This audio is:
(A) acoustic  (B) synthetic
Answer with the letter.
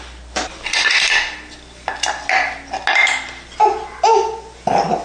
A